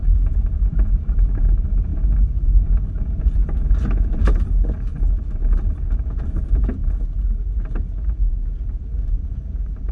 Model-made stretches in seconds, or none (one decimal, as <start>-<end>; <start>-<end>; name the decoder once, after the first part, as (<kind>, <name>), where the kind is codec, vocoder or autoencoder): 0.0-9.9 (vocoder, BigVGAN v2)